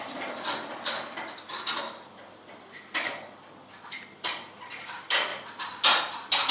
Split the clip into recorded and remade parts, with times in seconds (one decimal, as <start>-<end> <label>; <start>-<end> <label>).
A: 0.0-6.5 recorded